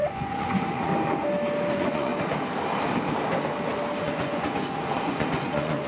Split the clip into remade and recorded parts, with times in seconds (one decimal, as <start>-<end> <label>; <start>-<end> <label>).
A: 0.0-0.9 remade; 0.9-1.7 recorded; 1.7-2.1 remade; 2.1-4.0 recorded; 4.0-5.9 remade